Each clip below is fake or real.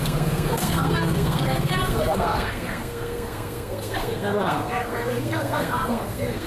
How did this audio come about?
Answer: fake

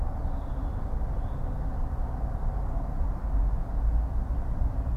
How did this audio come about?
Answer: real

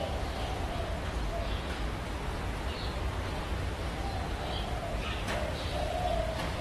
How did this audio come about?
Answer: real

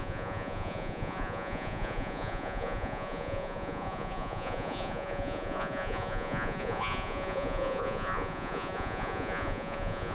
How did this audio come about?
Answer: fake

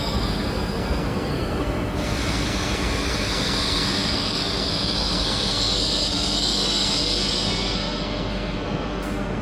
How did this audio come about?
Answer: fake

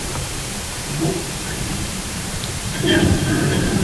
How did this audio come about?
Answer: fake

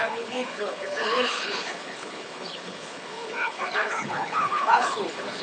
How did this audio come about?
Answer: fake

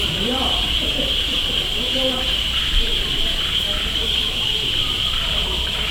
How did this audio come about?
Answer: fake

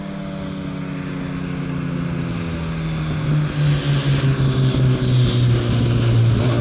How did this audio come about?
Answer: real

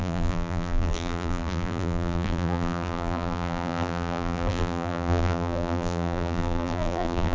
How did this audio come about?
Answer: fake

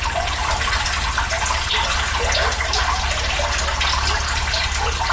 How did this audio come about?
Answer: real